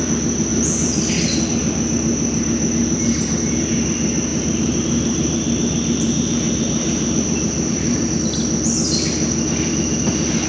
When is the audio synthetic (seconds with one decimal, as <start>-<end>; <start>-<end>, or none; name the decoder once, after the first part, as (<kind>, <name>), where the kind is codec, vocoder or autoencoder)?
0.5-1.1 (vocoder, BigVGAN v2); 4.3-8.2